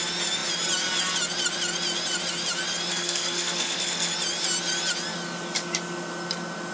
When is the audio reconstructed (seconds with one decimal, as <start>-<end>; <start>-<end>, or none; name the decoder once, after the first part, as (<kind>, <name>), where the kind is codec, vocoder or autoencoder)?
2.9-4.1 (codec, SNAC)